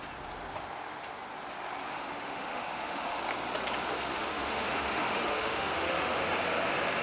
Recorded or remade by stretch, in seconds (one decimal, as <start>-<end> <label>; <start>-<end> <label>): 0.0-1.9 recorded; 1.9-3.2 remade; 3.2-4.1 recorded; 4.1-6.2 remade; 6.2-7.0 recorded